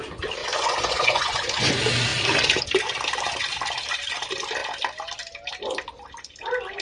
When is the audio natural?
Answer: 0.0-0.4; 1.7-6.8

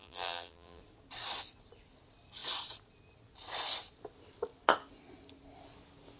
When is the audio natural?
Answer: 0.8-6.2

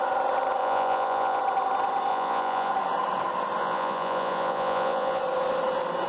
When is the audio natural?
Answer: 0.0-0.6; 1.4-2.1; 2.7-3.6; 5.2-6.1